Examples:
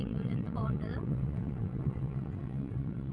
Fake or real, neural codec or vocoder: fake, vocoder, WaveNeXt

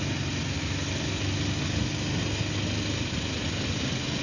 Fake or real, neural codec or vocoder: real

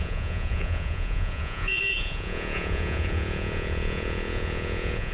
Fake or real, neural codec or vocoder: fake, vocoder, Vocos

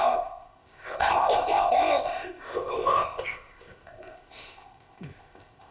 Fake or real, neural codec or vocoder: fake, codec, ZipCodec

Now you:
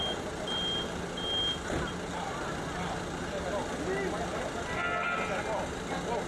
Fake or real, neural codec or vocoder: real